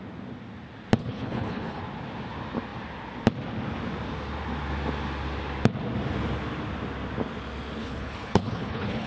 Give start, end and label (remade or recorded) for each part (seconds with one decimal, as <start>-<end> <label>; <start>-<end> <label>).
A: 0.0-1.0 recorded; 1.0-1.8 remade; 1.8-7.8 recorded; 7.8-9.1 remade

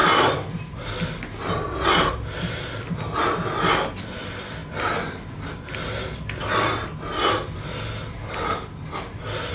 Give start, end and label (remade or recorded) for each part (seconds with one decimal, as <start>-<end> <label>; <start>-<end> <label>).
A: 0.0-9.5 recorded

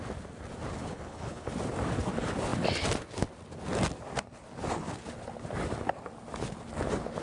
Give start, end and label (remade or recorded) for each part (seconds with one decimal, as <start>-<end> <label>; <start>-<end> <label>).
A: 0.0-0.8 recorded; 0.8-1.5 remade; 1.5-7.2 recorded

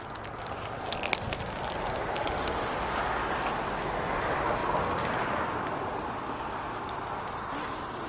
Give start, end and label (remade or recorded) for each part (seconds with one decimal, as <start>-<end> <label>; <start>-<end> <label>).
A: 0.0-8.1 recorded

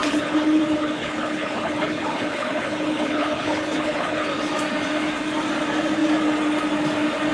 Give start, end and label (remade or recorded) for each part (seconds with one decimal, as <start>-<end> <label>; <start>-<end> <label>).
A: 0.0-4.4 remade; 4.4-7.3 recorded

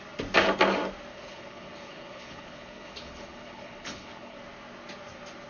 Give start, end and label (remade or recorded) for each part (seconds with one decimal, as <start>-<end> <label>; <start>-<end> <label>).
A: 0.0-1.1 recorded; 1.1-4.4 remade; 4.4-5.5 recorded

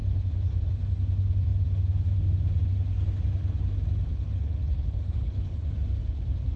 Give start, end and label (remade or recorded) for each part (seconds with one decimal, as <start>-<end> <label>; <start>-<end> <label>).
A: 0.0-4.1 recorded; 4.1-5.7 remade; 5.7-6.6 recorded

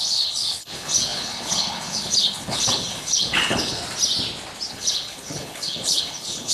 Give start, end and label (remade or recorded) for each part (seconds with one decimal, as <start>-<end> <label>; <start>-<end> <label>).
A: 0.0-3.8 remade; 3.8-4.7 recorded; 4.7-6.5 remade